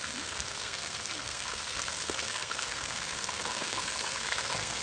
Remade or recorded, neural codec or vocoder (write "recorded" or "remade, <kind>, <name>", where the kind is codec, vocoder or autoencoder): remade, codec, SNAC